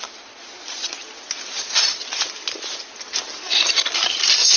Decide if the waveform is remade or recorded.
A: recorded